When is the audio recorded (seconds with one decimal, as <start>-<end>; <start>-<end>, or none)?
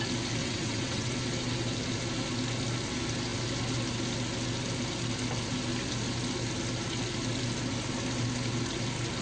0.0-0.4; 1.1-9.2